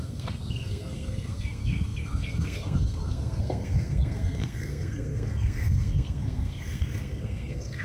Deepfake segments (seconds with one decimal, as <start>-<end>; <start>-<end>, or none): 0.0-7.8

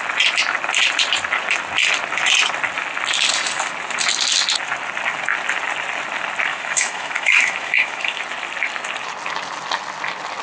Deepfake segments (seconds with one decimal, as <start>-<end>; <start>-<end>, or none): 6.5-8.2

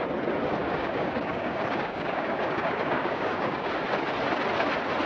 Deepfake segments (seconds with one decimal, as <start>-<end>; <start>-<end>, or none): 0.6-3.7

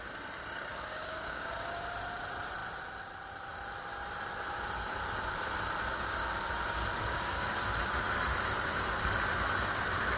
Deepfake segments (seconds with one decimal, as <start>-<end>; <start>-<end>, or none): 0.7-1.5; 7.0-7.5

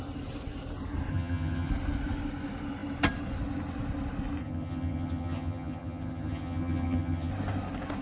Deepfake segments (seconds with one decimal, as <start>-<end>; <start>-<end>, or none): 1.1-1.7; 4.4-7.3

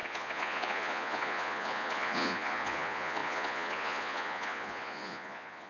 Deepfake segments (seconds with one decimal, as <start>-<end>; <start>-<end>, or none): 0.0-5.7